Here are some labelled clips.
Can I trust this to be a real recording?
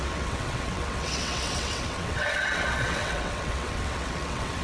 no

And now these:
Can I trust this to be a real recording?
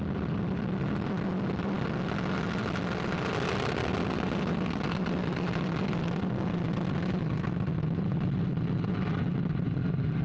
yes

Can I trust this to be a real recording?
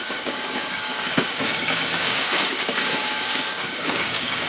no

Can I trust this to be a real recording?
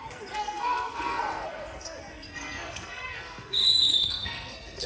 no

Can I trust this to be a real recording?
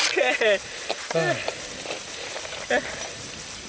yes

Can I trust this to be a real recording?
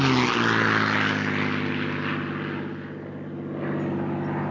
yes